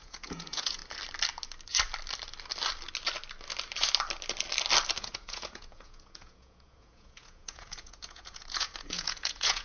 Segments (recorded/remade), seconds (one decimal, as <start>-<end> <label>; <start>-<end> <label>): 0.0-0.8 remade; 0.8-5.0 recorded; 5.0-9.6 remade